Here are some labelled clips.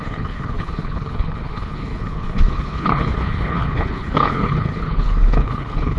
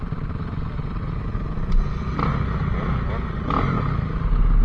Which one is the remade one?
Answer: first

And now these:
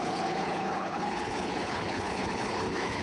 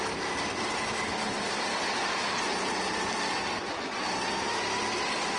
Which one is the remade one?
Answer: first